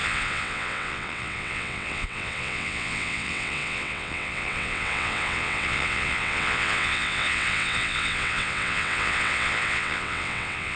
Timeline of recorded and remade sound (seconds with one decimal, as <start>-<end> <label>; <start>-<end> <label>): 0.0-10.8 remade